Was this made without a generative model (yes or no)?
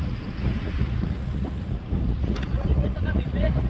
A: no